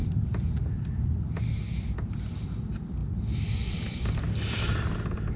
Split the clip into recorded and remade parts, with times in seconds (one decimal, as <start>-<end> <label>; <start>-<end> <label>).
0.0-1.4 remade; 1.4-3.0 recorded; 3.0-4.2 remade; 4.2-5.4 recorded